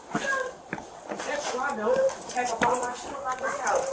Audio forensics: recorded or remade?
recorded